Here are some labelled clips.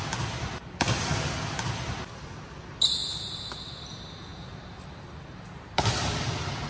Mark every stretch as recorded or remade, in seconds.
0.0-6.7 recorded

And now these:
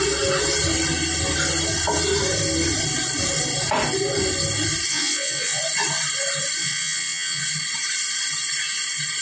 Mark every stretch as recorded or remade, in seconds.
0.0-4.9 recorded; 4.9-5.6 remade; 5.6-6.6 recorded; 6.6-7.4 remade; 7.4-9.2 recorded

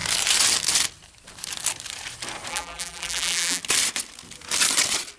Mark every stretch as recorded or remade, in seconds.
0.0-2.5 recorded; 2.5-3.6 remade; 3.6-5.2 recorded